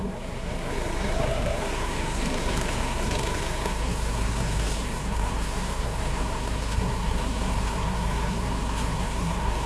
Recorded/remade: remade